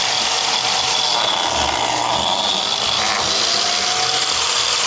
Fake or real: real